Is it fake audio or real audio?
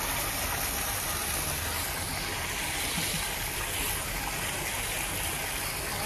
real